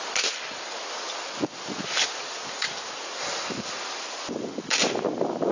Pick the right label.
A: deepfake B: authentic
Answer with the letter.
B